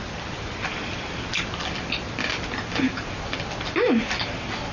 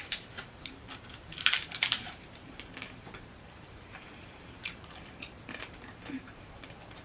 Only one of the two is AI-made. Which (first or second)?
second